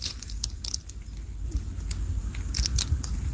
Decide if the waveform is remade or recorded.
recorded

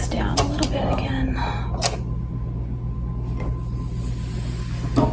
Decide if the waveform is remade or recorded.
recorded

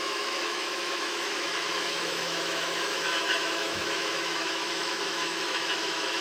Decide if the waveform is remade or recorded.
remade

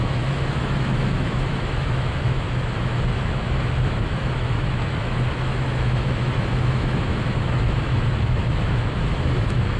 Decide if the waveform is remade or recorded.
remade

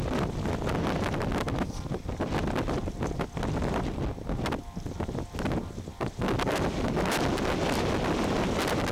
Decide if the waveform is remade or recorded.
recorded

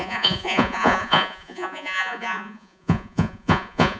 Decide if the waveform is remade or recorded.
remade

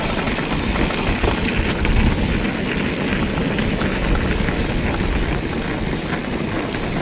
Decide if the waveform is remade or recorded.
recorded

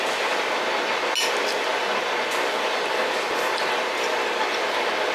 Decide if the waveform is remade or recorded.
recorded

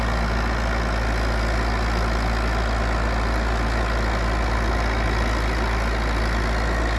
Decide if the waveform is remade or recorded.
recorded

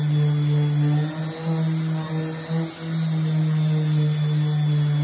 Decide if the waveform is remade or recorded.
recorded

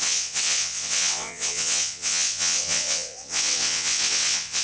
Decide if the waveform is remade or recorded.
remade